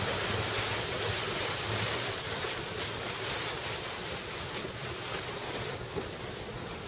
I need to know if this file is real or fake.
real